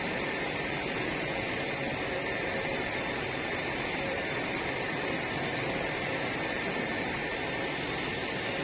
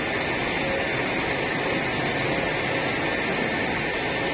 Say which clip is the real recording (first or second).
second